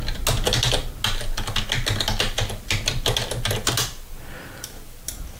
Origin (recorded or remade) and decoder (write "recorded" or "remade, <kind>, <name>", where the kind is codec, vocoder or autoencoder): recorded